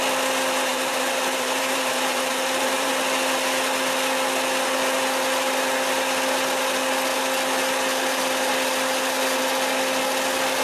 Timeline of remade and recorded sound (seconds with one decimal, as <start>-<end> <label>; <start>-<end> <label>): 0.0-0.7 recorded; 0.7-2.9 remade; 2.9-10.6 recorded